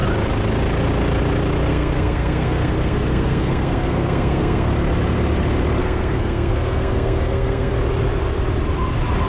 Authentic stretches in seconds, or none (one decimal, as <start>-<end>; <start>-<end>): 0.0-1.7; 4.7-5.8; 7.7-9.3

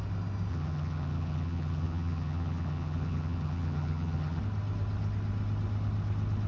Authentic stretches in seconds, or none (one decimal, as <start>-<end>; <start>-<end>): 0.0-0.5; 4.4-6.5

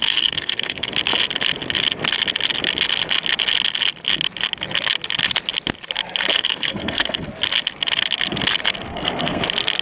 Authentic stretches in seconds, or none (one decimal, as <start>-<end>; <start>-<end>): 0.9-6.3; 7.3-8.9; 9.4-9.8

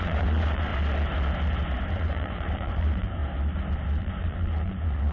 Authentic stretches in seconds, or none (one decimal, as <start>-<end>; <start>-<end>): 0.7-1.9; 3.2-4.0